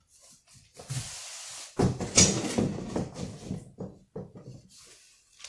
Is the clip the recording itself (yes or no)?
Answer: yes